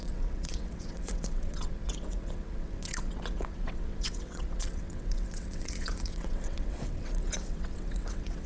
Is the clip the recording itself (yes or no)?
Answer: no